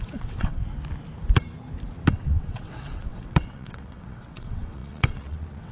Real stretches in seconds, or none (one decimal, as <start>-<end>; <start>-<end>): 0.6-2.1